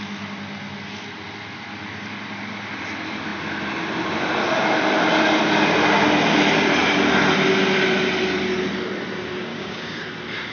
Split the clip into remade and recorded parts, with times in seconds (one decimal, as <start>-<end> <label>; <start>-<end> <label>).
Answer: 0.0-9.5 recorded; 9.5-10.0 remade; 10.0-10.5 recorded